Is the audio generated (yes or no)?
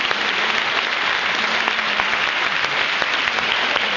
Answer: no